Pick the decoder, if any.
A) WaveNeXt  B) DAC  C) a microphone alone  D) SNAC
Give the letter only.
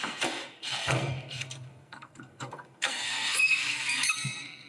D